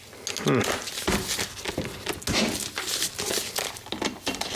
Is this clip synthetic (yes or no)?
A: no